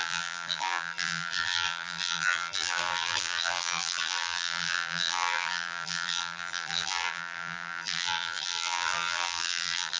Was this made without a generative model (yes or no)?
no